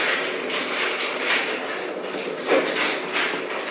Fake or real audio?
real